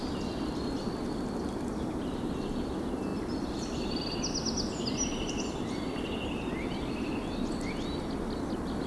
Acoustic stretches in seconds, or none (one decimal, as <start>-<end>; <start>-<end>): 0.0-8.9